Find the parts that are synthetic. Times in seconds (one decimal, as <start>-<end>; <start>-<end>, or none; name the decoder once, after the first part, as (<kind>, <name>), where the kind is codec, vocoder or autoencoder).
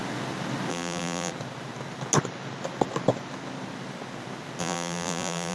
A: 0.7-1.3 (vocoder, BigVGAN v2); 4.6-5.5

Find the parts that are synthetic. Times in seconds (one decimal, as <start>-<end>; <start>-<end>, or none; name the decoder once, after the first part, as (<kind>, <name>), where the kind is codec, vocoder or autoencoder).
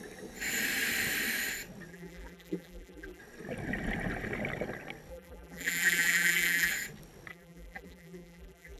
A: 1.9-3.2 (vocoder, BigVGAN v2); 5.1-6.7; 7.3-8.8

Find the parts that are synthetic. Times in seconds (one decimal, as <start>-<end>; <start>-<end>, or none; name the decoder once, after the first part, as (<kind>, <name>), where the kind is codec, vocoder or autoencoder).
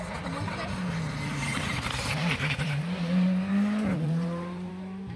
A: 1.5-3.5 (vocoder, BigVGAN v2); 3.9-4.7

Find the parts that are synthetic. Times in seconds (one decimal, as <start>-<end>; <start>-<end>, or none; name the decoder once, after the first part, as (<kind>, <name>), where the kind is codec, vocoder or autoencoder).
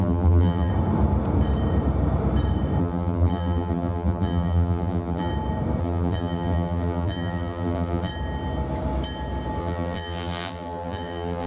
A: 0.0-0.7 (vocoder, BigVGAN v2); 2.8-5.3; 5.8-8.1; 9.6-11.5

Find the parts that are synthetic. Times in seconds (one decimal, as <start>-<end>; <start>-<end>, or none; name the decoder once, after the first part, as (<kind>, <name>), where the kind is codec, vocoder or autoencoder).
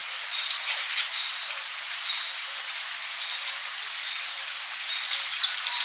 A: 0.0-1.7 (vocoder, BigVGAN v2); 4.0-4.9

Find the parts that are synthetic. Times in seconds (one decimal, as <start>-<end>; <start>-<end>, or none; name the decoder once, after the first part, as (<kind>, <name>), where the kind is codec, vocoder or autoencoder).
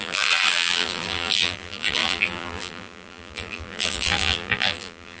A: 0.0-5.2 (vocoder, BigVGAN v2)